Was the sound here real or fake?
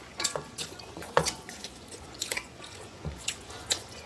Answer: fake